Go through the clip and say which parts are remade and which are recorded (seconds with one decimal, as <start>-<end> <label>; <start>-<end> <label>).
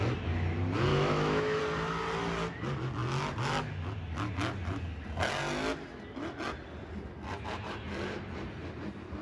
0.0-0.9 recorded; 0.9-1.6 remade; 1.6-9.2 recorded